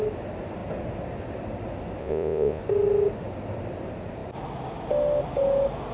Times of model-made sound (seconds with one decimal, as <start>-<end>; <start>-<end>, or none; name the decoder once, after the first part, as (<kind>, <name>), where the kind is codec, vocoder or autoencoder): 2.0-2.6 (vocoder, Vocos)